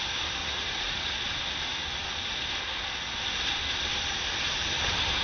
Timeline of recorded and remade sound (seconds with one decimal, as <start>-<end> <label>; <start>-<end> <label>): 0.0-0.4 recorded; 0.4-1.1 remade; 1.1-5.2 recorded